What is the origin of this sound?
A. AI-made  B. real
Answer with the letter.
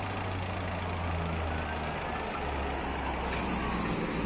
B